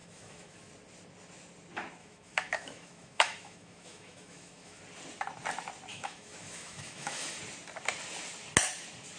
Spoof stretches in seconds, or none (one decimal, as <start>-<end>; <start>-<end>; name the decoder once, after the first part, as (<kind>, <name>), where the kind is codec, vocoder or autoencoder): 0.0-0.7 (autoencoder, DAC-VAE); 2.0-4.8; 5.9-7.4